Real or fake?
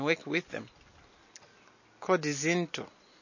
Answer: real